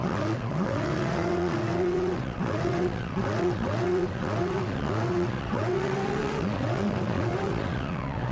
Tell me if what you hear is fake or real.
fake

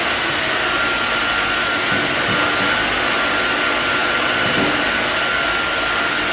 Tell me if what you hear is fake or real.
real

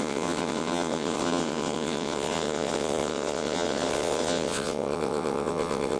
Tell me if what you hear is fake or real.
fake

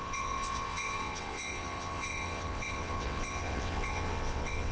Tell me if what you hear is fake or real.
fake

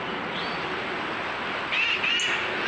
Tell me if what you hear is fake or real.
real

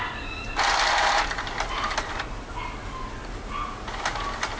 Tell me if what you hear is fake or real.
real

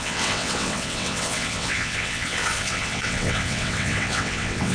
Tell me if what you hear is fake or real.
fake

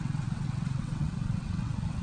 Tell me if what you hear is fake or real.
fake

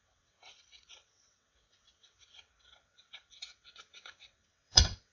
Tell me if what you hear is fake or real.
fake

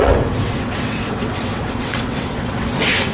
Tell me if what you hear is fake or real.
fake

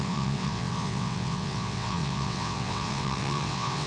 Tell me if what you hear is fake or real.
fake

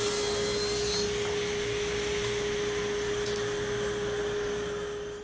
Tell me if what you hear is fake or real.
real